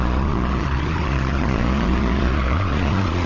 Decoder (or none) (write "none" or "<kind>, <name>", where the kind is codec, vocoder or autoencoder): vocoder, Vocos